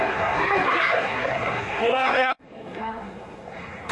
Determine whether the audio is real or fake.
fake